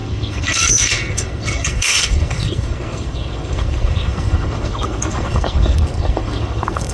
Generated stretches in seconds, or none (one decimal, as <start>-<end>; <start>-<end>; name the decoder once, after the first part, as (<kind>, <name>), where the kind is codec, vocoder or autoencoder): 0.0-6.9 (codec, SNAC)